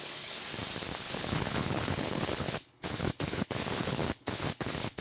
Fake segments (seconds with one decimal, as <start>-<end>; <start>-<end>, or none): 0.0-0.4; 1.0-5.0